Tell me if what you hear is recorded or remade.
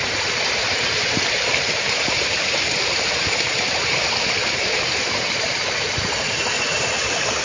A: remade